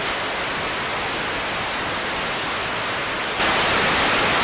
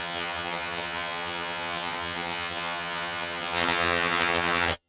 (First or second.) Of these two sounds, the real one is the first